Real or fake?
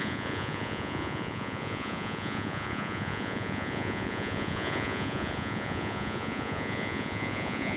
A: fake